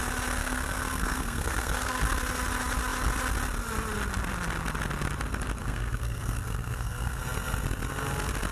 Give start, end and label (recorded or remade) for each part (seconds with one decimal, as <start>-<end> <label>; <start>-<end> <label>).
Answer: 0.0-0.4 recorded; 0.4-2.0 remade; 2.0-5.6 recorded; 5.6-7.2 remade; 7.2-8.5 recorded